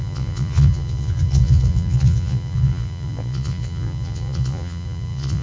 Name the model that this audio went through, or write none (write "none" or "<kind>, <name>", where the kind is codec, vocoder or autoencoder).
vocoder, Vocos